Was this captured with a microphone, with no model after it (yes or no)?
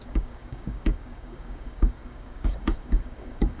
no